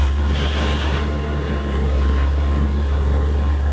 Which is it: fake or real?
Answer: fake